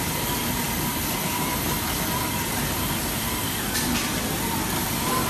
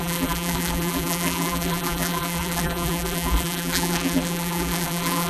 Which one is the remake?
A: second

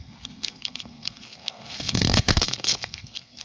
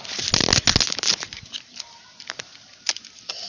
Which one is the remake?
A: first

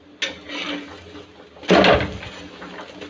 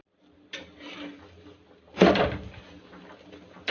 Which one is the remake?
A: second